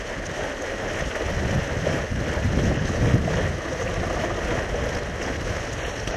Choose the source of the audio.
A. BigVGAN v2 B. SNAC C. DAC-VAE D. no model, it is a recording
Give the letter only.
D